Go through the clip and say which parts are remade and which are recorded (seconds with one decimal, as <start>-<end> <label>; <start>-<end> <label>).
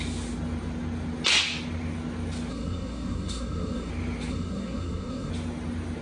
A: 0.0-2.5 recorded; 2.5-3.9 remade; 3.9-4.3 recorded; 4.3-5.3 remade; 5.3-6.0 recorded